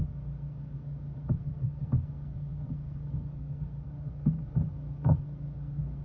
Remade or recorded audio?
remade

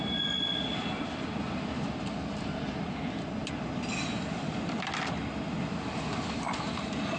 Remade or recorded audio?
recorded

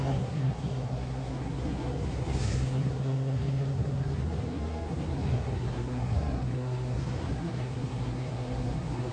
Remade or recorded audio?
remade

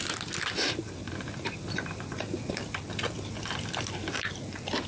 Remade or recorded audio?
recorded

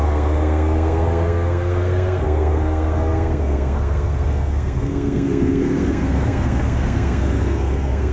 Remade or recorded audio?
remade